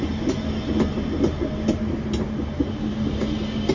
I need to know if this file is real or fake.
real